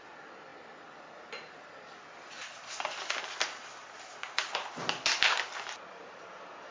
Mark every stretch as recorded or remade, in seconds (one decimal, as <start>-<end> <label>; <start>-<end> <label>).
0.0-6.7 recorded